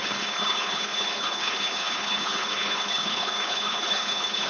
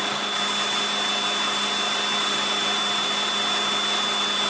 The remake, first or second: first